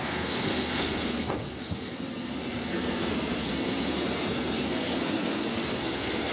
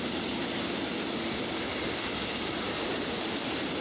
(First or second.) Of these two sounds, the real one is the second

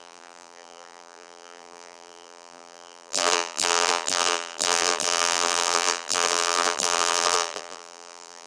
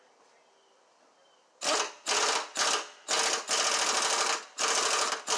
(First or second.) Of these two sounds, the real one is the second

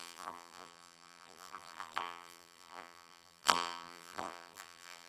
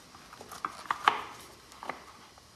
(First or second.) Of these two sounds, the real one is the second